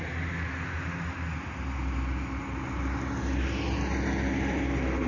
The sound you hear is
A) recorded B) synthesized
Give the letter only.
A